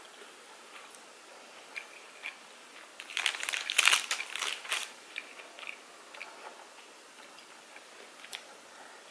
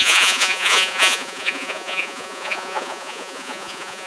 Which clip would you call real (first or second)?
first